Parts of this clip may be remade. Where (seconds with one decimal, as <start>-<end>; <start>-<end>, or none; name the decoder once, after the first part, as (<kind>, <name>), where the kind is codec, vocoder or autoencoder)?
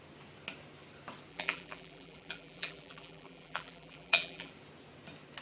1.3-4.5 (vocoder, BigVGAN v2)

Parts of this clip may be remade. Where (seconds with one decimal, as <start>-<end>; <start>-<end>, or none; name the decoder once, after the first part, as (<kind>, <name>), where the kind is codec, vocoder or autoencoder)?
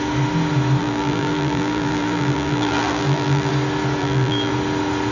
0.8-3.5 (vocoder, BigVGAN v2); 4.0-4.5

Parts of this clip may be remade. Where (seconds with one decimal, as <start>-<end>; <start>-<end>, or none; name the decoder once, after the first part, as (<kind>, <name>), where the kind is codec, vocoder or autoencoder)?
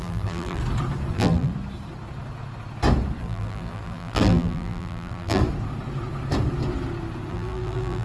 0.0-0.6 (vocoder, BigVGAN v2); 1.1-1.5; 3.2-5.4; 7.3-8.0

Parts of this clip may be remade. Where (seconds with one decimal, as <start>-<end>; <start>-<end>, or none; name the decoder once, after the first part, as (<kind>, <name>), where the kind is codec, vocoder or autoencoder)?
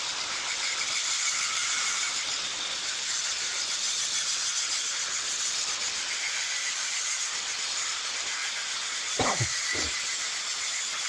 0.0-4.4 (vocoder, BigVGAN v2); 4.9-11.1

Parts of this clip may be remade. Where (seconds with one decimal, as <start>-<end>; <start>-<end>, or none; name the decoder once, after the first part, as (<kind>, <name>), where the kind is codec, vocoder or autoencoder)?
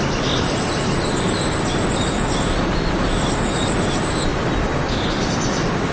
none